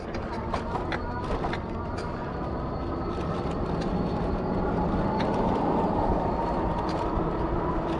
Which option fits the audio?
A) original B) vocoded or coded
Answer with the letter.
A